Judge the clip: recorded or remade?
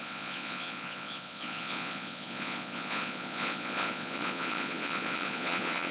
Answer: remade